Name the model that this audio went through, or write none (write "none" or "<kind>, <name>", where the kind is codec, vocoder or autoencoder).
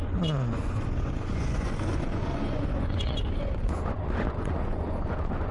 vocoder, Vocos